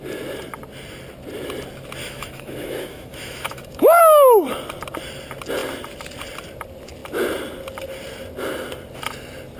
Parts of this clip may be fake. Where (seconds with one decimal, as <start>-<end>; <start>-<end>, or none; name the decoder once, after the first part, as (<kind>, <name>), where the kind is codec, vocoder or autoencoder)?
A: 2.0-4.0 (autoencoder, DAC-VAE)